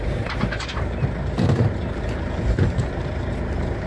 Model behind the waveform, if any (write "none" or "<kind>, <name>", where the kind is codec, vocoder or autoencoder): vocoder, BigVGAN v2